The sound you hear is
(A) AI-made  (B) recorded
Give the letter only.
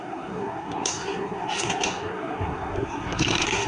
A